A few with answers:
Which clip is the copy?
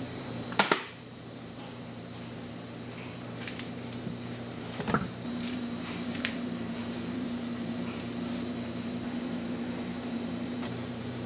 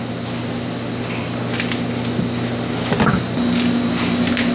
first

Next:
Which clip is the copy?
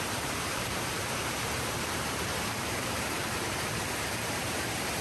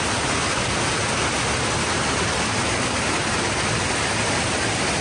first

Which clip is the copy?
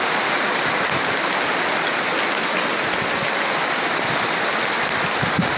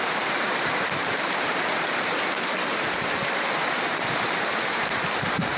second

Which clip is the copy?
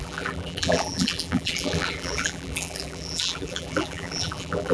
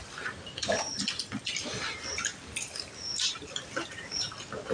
first